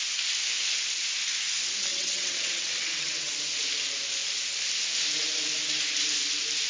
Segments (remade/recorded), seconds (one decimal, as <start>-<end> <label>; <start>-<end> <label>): 0.0-1.9 recorded; 1.9-3.3 remade; 3.3-6.7 recorded